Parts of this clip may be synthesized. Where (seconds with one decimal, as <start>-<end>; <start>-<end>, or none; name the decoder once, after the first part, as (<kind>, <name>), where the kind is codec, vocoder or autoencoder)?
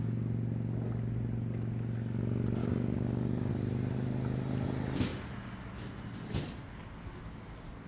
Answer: 2.6-3.5 (codec, DAC)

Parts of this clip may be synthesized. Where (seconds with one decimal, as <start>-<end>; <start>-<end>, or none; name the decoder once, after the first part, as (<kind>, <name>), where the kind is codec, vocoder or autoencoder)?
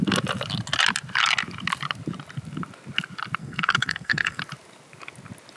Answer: 3.4-4.4 (codec, SNAC)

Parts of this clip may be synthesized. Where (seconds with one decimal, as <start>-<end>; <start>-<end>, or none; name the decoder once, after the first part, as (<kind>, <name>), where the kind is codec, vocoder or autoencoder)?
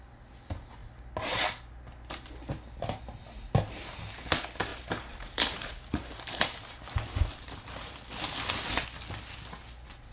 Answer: 4.7-8.0 (vocoder, BigVGAN v2)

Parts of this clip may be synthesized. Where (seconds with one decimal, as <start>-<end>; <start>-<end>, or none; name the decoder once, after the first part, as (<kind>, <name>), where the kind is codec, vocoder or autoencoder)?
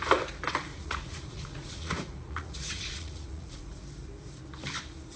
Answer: 0.7-3.8 (vocoder, Vocos)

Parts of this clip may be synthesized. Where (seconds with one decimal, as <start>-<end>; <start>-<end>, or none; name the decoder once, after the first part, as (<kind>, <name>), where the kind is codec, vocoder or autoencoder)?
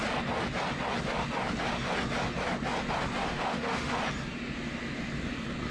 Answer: 3.2-4.0 (autoencoder, DAC-VAE)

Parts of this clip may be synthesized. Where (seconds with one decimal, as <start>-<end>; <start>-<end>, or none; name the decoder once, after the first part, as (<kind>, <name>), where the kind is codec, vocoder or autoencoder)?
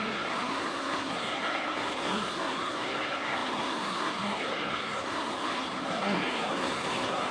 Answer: 0.0-7.3 (codec, SNAC)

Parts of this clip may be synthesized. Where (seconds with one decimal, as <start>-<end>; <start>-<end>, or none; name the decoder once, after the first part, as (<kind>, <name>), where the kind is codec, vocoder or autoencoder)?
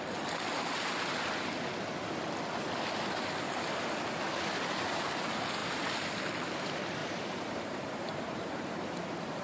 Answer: 7.0-9.0 (vocoder, BigVGAN v2)